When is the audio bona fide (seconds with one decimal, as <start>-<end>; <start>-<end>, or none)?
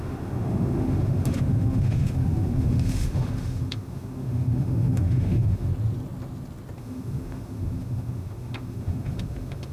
5.7-6.8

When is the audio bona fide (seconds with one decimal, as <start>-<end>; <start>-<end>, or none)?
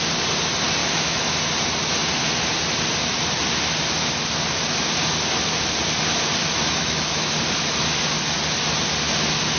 0.0-0.8; 1.4-6.4; 7.3-9.6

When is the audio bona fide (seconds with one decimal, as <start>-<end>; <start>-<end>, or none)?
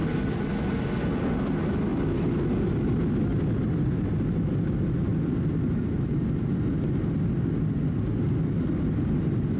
0.0-9.6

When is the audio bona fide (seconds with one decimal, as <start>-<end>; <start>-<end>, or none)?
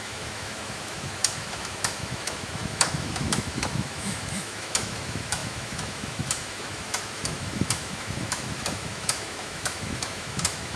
none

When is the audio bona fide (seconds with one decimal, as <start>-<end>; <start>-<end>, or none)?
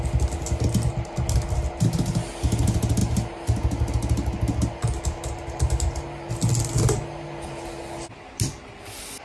0.0-9.2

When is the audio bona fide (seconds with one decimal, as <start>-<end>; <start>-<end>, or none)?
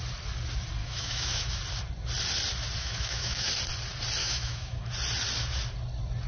0.0-0.8; 1.6-2.8; 3.5-4.2; 4.8-6.3